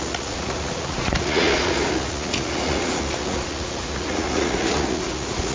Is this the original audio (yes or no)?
no